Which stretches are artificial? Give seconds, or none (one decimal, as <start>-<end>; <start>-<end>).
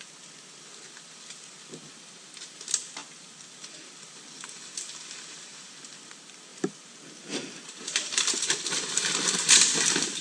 3.0-3.8; 6.5-9.0